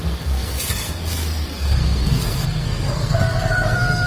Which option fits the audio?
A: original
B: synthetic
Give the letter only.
B